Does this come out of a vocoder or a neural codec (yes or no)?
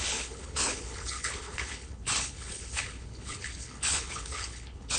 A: yes